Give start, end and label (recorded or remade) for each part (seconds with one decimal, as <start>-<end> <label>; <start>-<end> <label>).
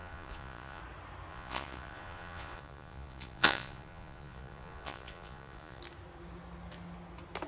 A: 0.0-0.8 remade; 0.8-1.3 recorded; 1.3-5.8 remade; 5.8-7.5 recorded